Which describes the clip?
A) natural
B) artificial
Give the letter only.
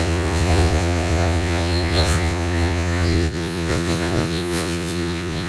B